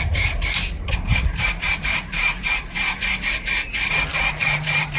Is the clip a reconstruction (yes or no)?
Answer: yes